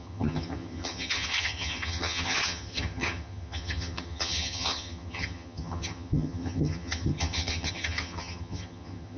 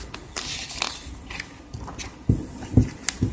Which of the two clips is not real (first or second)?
first